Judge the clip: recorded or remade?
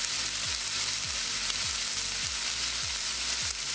recorded